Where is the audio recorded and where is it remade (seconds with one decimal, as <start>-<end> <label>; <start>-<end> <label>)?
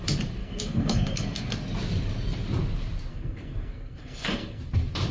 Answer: 0.0-0.4 recorded; 0.4-1.4 remade; 1.4-3.1 recorded; 3.1-4.6 remade; 4.6-5.1 recorded